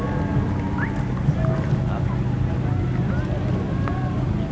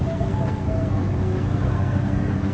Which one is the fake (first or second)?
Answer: second